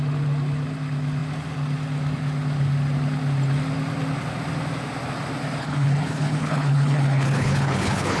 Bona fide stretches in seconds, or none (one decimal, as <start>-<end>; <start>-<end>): 0.0-5.6